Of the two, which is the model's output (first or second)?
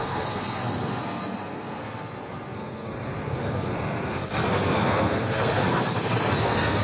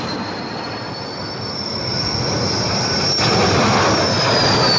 first